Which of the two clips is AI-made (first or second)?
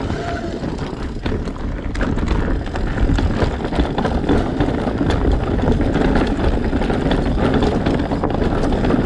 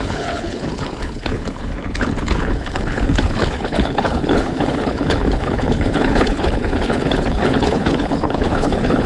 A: second